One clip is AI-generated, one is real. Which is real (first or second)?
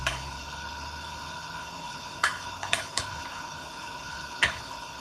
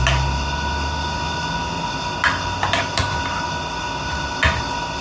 second